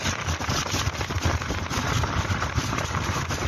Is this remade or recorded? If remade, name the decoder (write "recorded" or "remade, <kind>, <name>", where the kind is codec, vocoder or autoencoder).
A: recorded